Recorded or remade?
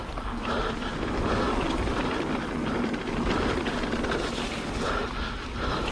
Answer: recorded